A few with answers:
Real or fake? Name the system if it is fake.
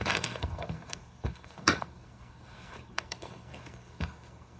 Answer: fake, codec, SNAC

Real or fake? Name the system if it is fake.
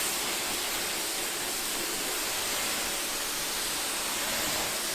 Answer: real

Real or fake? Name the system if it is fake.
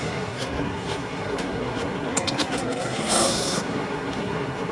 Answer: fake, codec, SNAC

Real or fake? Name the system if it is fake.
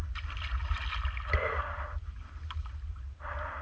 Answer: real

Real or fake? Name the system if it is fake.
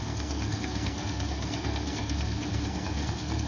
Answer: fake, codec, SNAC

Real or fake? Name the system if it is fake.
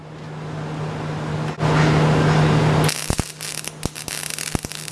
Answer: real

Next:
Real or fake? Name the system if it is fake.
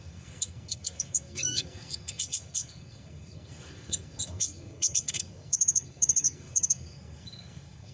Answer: fake, codec, SNAC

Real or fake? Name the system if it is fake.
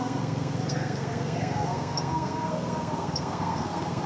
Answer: fake, codec, SNAC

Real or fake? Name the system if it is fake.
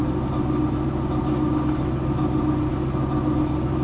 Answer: real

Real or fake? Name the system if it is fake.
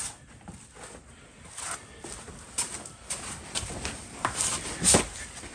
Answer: real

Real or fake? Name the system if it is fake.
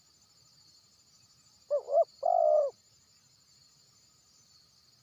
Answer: real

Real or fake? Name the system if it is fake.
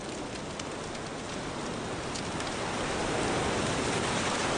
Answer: real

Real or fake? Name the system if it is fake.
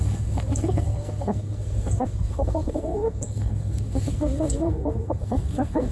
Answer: fake, codec, SNAC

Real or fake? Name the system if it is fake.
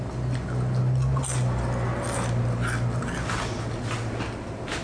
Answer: real